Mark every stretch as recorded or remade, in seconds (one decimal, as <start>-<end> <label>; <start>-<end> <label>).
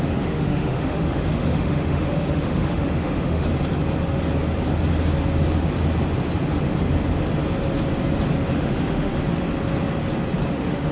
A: 0.0-3.5 remade; 3.5-8.5 recorded; 8.5-9.1 remade; 9.1-10.5 recorded; 10.5-10.9 remade